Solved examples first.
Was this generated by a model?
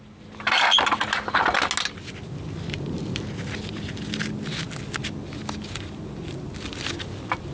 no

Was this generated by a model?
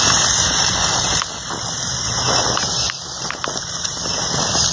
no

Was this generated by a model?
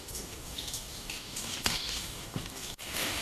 yes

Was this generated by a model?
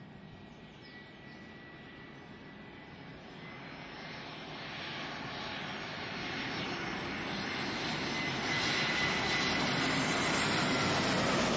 no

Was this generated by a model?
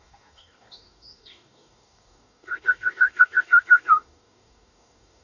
yes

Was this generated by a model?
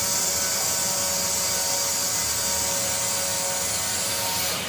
no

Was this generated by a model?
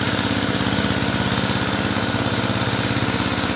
no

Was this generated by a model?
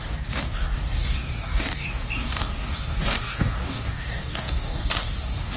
yes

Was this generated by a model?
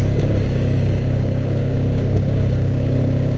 yes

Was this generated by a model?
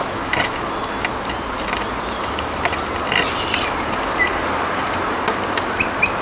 no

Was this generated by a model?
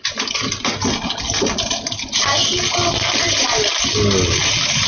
no